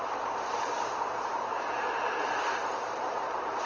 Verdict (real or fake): fake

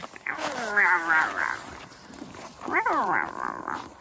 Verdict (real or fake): fake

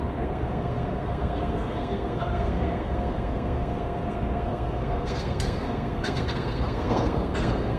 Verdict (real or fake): fake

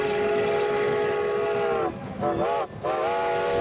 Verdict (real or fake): real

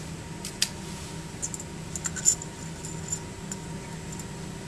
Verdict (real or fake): real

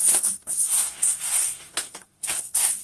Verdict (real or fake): fake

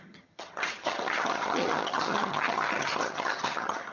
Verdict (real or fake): fake